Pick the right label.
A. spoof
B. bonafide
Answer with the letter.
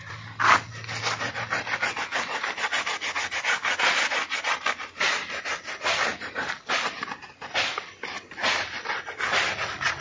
B